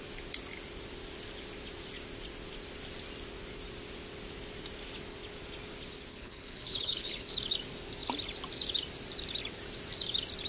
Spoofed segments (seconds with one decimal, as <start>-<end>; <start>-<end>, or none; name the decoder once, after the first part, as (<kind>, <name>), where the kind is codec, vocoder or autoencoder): 6.1-7.3 (codec, HILCodec)